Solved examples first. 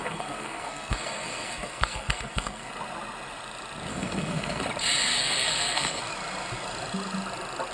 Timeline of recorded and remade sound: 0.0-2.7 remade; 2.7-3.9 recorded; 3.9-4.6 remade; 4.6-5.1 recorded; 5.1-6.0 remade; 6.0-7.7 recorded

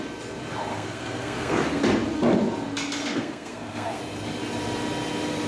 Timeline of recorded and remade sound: 0.0-0.7 recorded; 0.7-1.8 remade; 1.8-3.0 recorded; 3.0-4.0 remade; 4.0-5.5 recorded

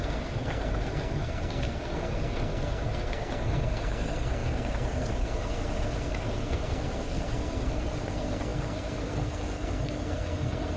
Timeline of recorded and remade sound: 0.0-10.8 remade

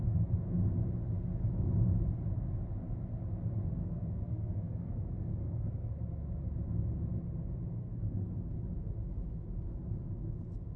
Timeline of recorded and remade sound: 0.0-3.8 recorded; 3.8-5.9 remade; 5.9-7.8 recorded; 7.8-8.3 remade; 8.3-10.8 recorded

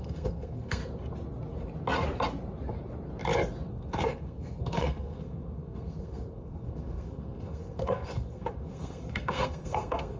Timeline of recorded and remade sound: 0.0-0.8 remade; 0.8-3.7 recorded; 3.7-10.2 remade

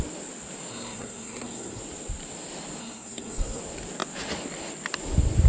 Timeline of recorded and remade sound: 0.0-0.7 recorded; 0.7-1.8 remade; 1.8-2.8 recorded; 2.8-3.6 remade; 3.6-5.5 recorded

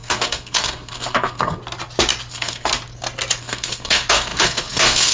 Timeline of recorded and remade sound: 0.0-1.6 remade; 1.6-2.3 recorded; 2.3-2.7 remade; 2.7-3.4 recorded; 3.4-5.1 remade